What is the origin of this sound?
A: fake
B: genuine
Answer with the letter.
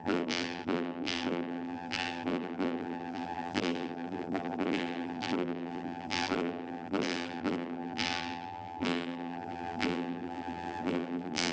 A